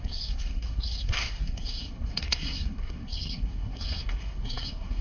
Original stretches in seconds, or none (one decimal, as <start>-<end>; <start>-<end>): none